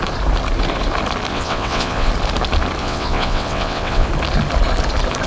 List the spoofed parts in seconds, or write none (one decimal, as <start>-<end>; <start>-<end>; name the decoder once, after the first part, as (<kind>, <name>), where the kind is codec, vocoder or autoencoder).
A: 1.3-2.1 (vocoder, WaveNeXt); 2.8-4.1